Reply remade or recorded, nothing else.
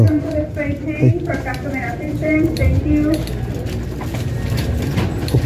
recorded